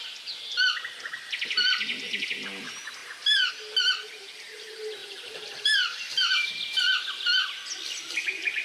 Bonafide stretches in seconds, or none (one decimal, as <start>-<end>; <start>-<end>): 0.0-3.0; 3.5-5.0; 6.5-8.6

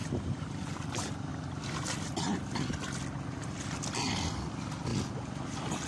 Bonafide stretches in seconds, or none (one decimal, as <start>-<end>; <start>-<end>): 0.6-5.9

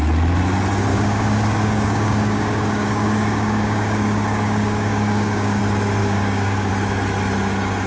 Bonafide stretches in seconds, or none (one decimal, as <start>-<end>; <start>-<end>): 0.0-0.9; 5.6-6.0; 6.7-7.9